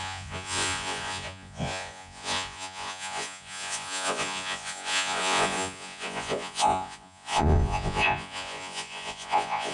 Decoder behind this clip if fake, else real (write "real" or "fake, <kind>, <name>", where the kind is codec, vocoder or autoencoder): fake, vocoder, Vocos